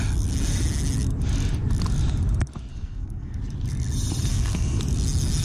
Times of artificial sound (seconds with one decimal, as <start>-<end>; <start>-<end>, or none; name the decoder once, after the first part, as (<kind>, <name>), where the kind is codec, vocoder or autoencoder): 2.7-3.4 (codec, SNAC); 4.3-4.8